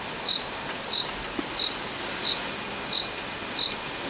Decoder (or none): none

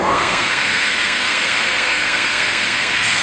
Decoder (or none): codec, SNAC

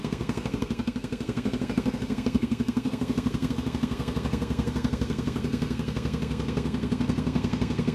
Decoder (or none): codec, SNAC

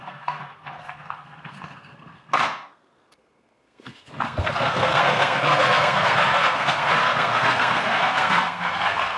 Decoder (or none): codec, SNAC